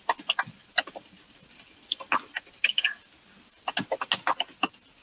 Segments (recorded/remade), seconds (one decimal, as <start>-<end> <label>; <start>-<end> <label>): 0.0-5.0 recorded